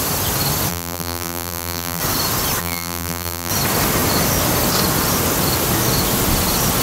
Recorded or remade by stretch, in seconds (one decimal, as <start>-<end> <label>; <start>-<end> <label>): 0.0-0.7 recorded; 0.7-2.0 remade; 2.0-2.6 recorded; 2.6-3.5 remade; 3.5-6.8 recorded